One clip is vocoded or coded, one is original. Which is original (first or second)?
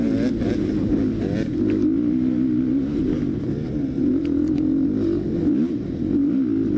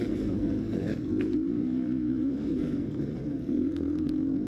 first